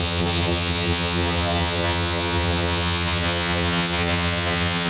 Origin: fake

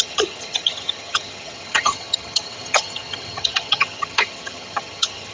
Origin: fake